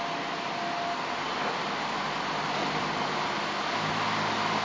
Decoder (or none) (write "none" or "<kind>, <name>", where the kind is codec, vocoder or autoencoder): none